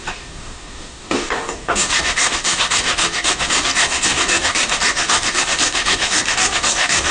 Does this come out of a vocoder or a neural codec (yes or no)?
yes